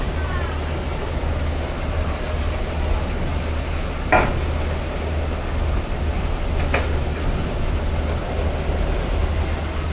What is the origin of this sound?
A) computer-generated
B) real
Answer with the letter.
B